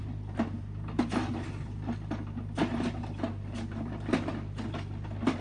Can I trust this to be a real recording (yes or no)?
yes